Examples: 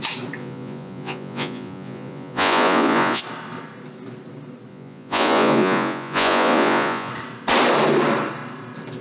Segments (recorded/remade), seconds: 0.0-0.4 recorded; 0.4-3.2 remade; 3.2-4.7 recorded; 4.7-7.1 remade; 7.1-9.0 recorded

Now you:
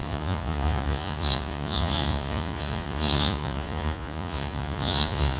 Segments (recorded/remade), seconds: 0.0-5.4 remade

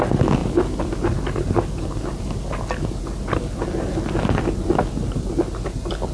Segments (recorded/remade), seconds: 0.0-6.1 recorded

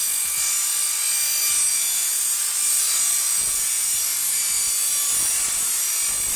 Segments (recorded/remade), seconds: 0.0-1.7 recorded; 1.7-2.4 remade; 2.4-3.1 recorded; 3.1-3.9 remade; 3.9-6.4 recorded

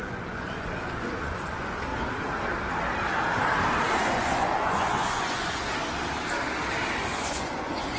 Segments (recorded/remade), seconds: 0.0-1.9 remade; 1.9-4.0 recorded; 4.0-5.7 remade; 5.7-7.1 recorded; 7.1-8.0 remade

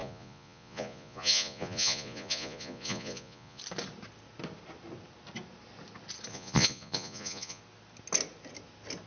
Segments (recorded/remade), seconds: 0.0-3.6 remade; 3.6-6.3 recorded; 6.3-7.6 remade; 7.6-9.1 recorded